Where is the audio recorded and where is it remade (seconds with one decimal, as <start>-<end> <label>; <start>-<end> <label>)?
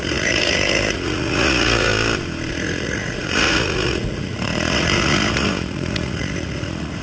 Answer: 0.0-1.9 remade; 1.9-2.5 recorded; 2.5-7.0 remade